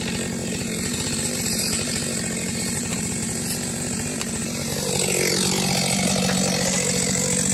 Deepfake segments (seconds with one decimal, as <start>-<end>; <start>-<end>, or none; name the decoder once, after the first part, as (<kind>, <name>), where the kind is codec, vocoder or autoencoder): 0.4-4.9 (vocoder, BigVGAN v2)